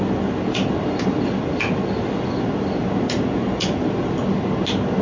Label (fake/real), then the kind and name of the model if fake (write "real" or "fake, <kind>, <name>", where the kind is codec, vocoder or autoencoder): real